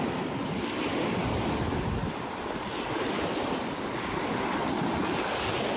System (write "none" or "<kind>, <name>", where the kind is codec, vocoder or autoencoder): none